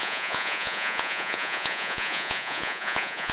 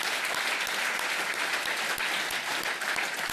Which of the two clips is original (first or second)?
second